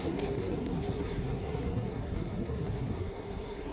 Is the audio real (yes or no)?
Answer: no